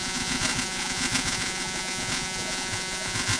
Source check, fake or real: fake